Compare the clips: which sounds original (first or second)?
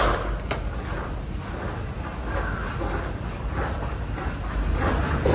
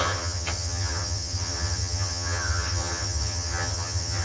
first